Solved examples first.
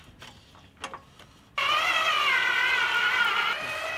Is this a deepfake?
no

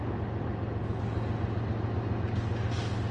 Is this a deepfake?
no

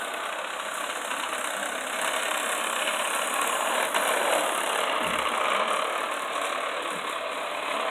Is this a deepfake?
no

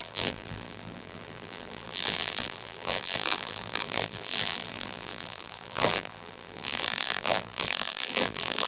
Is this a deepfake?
yes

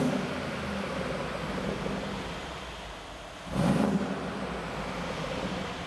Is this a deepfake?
no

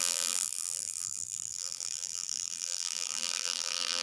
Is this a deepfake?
yes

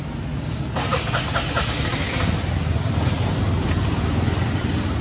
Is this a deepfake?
yes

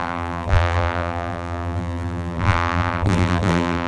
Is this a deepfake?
yes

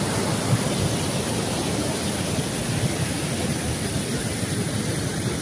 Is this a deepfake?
no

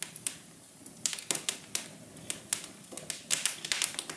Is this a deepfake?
no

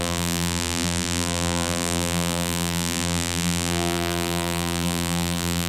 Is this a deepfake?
yes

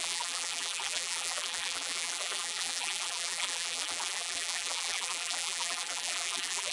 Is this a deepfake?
yes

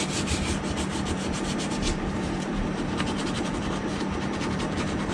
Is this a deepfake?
yes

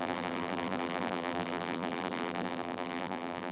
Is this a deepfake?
yes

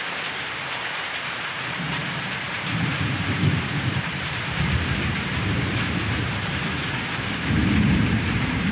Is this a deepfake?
yes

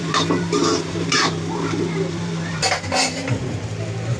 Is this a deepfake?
yes